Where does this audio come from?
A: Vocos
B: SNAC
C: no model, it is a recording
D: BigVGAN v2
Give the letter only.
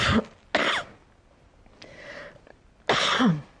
C